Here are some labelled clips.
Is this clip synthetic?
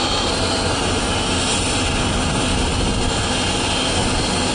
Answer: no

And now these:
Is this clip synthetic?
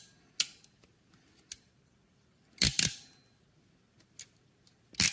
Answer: no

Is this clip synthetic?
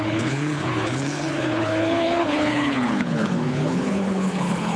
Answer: yes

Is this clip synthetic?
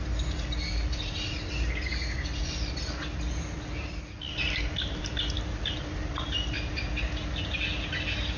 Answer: no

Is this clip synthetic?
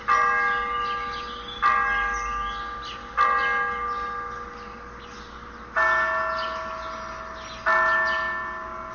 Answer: no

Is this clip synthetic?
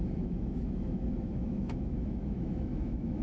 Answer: yes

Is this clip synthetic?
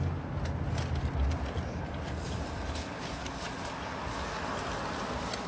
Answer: no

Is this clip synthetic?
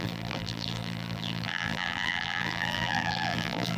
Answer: yes